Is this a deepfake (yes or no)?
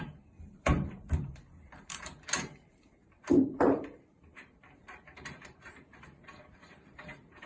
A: yes